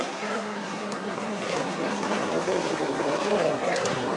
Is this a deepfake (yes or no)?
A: yes